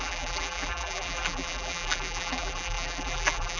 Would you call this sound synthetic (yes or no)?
yes